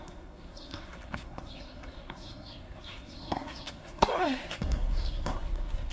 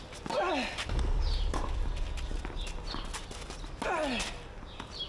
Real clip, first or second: second